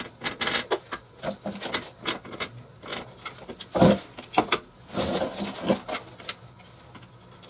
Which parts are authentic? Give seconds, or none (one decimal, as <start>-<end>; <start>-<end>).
0.0-2.9; 4.3-7.5